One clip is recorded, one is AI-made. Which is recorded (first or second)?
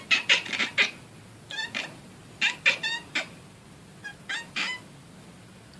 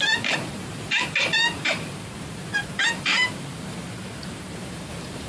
first